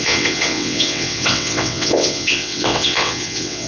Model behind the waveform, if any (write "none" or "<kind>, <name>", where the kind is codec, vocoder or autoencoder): vocoder, WaveNeXt